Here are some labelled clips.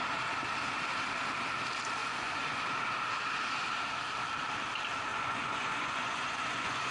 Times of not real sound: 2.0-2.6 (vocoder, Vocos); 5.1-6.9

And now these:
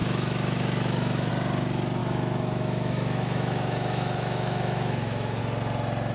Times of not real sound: 0.0-1.3 (autoencoder, DAC-VAE); 2.0-5.4

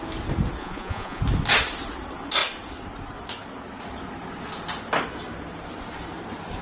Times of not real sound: 0.6-1.2 (vocoder, Vocos)

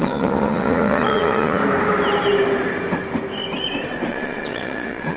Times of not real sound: 0.0-1.6 (vocoder, Vocos); 4.1-5.2

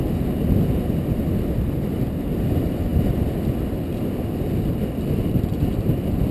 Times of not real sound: none

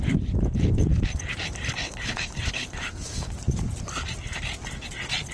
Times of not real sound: 1.8-3.3 (codec, HILCodec)

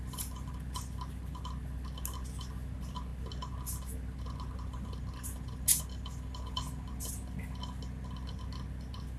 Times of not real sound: none

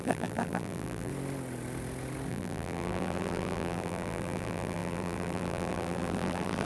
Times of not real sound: 0.0-1.1 (vocoder, BigVGAN v2); 2.3-6.6